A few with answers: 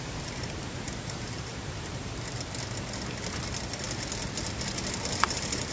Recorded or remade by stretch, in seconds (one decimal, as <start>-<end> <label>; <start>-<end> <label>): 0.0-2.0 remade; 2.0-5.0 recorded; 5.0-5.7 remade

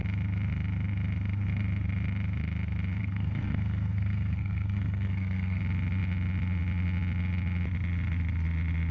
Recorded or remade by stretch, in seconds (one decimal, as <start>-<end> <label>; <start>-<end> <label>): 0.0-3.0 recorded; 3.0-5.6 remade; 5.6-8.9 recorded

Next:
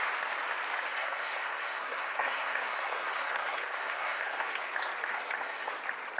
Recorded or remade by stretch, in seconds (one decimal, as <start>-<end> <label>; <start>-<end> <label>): 0.0-0.9 recorded; 0.9-4.6 remade; 4.6-5.1 recorded; 5.1-5.7 remade; 5.7-6.2 recorded

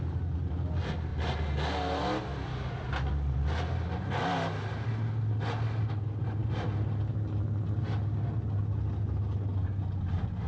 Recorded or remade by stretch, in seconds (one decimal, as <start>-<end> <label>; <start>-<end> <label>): 0.0-10.5 recorded

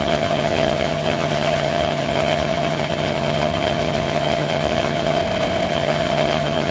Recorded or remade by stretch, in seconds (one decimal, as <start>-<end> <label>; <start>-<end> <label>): 0.0-5.2 remade; 5.2-5.7 recorded; 5.7-6.7 remade